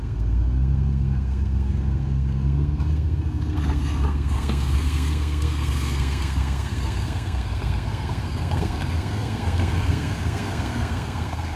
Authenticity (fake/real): fake